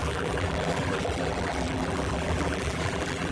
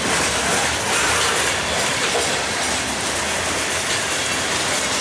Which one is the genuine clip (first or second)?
second